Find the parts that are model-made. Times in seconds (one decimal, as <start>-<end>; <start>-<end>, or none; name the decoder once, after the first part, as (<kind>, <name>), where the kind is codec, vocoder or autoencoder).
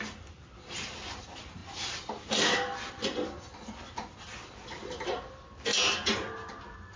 none